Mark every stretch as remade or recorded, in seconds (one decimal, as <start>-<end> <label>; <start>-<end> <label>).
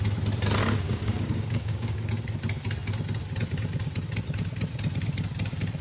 0.0-0.6 recorded; 0.6-2.1 remade; 2.1-5.8 recorded